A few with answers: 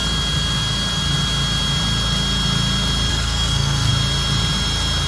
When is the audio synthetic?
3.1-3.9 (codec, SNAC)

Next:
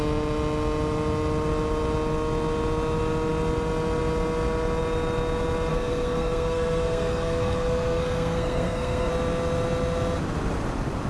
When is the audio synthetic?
5.7-9.1 (codec, SNAC)

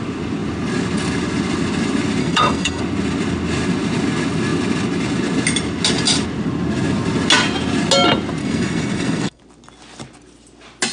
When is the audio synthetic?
2.2-2.8 (codec, SNAC); 8.4-9.4

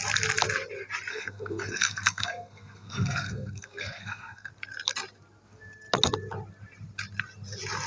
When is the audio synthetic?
1.1-4.5 (codec, SNAC)

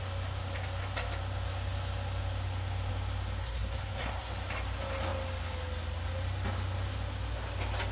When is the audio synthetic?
3.4-4.3 (codec, SNAC)

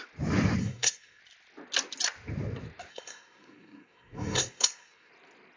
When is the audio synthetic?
0.6-1.2 (codec, SNAC); 2.9-5.1

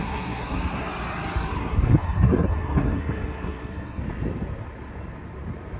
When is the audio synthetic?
0.0-0.9 (codec, SNAC); 1.6-4.0

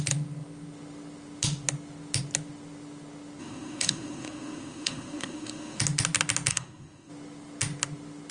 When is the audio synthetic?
3.4-5.8 (codec, SNAC); 6.5-7.1